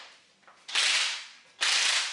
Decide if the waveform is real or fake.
real